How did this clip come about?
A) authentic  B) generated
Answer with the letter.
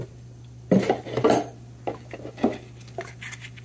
A